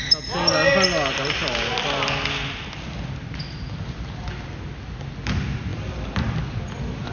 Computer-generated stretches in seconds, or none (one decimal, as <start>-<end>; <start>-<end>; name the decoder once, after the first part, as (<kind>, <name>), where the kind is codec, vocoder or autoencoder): none